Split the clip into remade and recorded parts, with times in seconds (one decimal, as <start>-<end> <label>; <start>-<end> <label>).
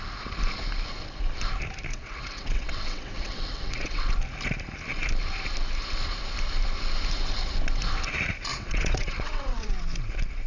0.0-1.9 recorded; 1.9-4.1 remade; 4.1-8.5 recorded; 8.5-9.7 remade; 9.7-10.5 recorded